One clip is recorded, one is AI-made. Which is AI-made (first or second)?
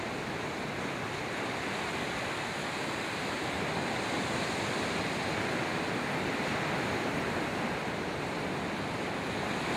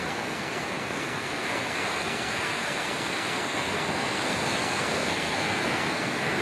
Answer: second